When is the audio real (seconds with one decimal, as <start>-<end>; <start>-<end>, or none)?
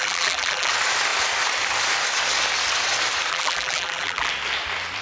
0.7-3.3; 4.3-5.0